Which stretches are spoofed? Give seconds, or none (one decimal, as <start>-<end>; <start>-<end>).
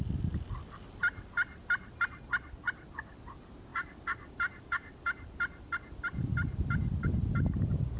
none